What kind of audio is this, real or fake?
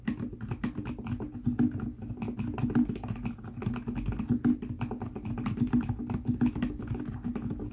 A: real